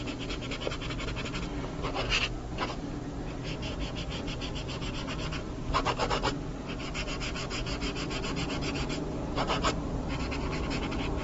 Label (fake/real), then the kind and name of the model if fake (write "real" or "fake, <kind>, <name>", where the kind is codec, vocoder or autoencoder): real